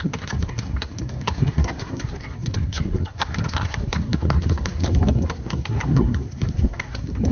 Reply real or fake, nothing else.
fake